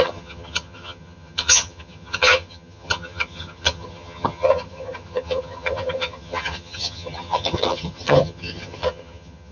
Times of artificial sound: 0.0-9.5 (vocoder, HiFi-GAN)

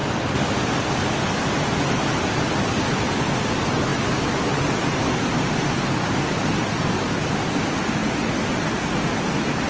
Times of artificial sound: none